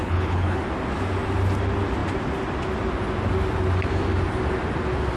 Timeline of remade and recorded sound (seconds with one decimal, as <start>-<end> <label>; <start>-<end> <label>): 0.0-0.6 remade; 0.6-5.2 recorded

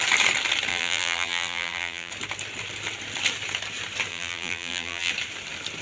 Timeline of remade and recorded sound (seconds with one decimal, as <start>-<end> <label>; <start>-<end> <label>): 0.0-0.7 recorded; 0.7-2.1 remade; 2.1-4.1 recorded; 4.1-5.1 remade; 5.1-5.8 recorded

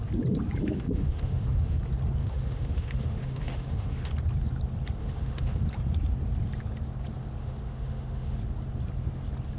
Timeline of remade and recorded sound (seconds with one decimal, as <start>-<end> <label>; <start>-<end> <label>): 0.0-0.6 recorded; 0.6-1.8 remade; 1.8-2.2 recorded; 2.2-4.1 remade; 4.1-5.0 recorded; 5.0-5.6 remade; 5.6-7.4 recorded; 7.4-8.4 remade; 8.4-9.6 recorded

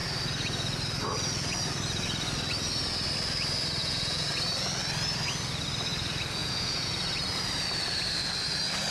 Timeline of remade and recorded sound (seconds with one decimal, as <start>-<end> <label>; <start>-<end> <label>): 0.0-3.8 recorded; 3.8-4.3 remade; 4.3-6.4 recorded; 6.4-6.9 remade; 6.9-8.9 recorded

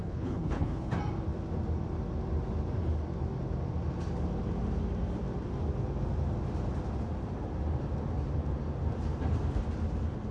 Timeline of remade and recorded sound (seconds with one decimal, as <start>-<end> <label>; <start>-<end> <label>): 0.0-0.9 remade; 0.9-10.3 recorded

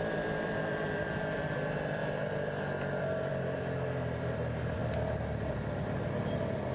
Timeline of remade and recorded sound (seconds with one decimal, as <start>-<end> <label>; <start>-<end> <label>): 0.0-2.0 remade; 2.0-3.0 recorded; 3.0-4.8 remade; 4.8-5.5 recorded; 5.5-6.7 remade